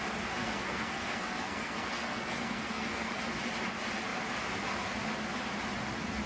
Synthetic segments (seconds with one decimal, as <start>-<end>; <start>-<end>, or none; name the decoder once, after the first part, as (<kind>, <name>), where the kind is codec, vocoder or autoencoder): 0.4-3.2 (codec, SNAC)